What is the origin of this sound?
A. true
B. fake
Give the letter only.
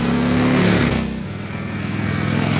B